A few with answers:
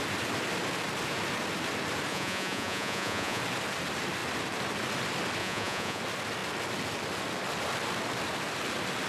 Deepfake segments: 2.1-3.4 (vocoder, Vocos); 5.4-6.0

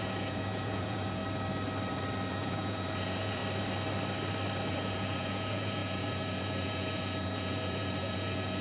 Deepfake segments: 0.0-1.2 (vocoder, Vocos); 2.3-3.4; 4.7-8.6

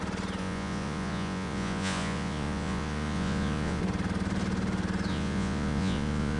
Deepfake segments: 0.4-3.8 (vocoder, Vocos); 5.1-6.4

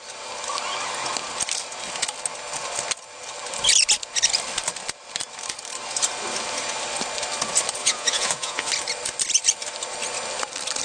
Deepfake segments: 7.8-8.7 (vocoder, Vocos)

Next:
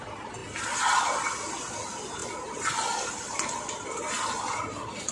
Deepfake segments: none

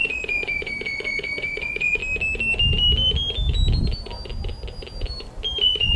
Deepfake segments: 0.0-2.0 (vocoder, Vocos); 5.6-6.0